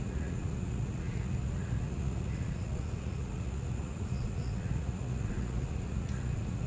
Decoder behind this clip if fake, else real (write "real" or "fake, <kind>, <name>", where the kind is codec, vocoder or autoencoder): fake, vocoder, Vocos